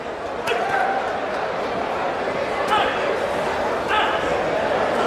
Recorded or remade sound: recorded